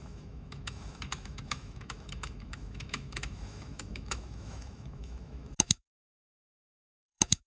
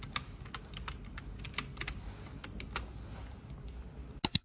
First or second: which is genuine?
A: second